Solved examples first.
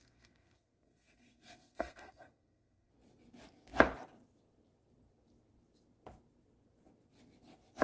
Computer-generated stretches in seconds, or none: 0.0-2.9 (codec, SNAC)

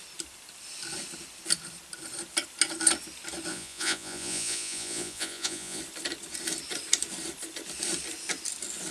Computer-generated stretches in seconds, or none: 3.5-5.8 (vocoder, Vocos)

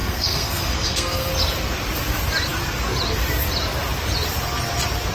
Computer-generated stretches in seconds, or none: 0.0-1.3 (codec, SNAC)

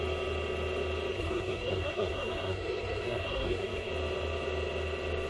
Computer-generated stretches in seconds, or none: 1.1-3.9 (codec, SNAC)

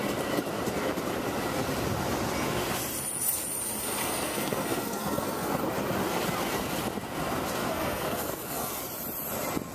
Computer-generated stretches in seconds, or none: 4.0-5.6 (codec, SNAC); 7.6-8.8

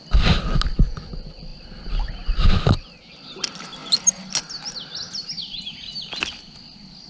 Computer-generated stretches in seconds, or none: none